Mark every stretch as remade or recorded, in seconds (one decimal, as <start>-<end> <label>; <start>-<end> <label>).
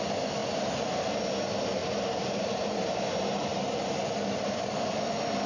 0.0-1.8 recorded; 1.8-2.8 remade; 2.8-3.5 recorded; 3.5-5.0 remade; 5.0-5.5 recorded